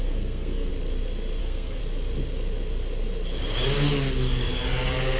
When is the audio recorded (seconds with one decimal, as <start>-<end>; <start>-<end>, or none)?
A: 0.7-1.4; 1.8-5.2